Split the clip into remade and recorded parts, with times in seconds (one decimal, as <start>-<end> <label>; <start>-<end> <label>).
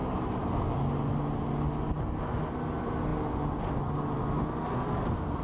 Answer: 0.0-5.4 recorded